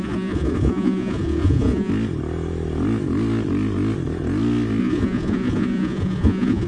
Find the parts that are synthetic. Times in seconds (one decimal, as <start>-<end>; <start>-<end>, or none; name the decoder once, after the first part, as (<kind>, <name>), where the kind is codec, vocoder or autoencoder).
0.0-1.9 (vocoder, Vocos); 4.8-6.7